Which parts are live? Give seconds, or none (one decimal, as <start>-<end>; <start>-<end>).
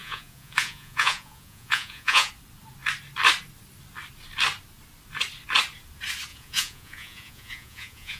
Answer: 2.3-6.3